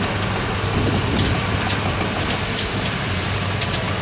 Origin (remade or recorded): recorded